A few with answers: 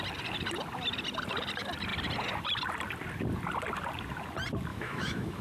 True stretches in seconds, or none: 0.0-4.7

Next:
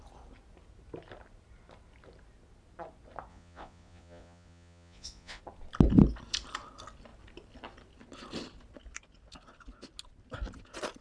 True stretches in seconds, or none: 0.0-3.3; 5.4-11.0

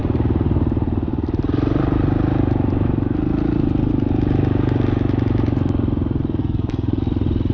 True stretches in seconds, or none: 0.0-6.4; 7.0-7.5